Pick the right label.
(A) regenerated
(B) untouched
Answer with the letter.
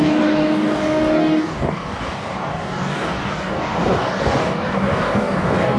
A